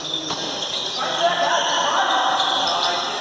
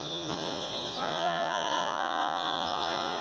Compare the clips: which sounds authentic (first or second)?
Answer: first